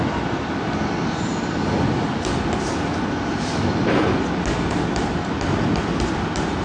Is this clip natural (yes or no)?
yes